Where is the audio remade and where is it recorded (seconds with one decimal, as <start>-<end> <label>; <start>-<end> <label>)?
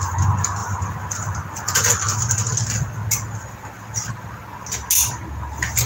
0.0-5.9 recorded